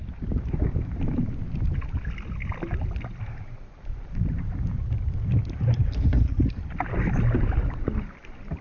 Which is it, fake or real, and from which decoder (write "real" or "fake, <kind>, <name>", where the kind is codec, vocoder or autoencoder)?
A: real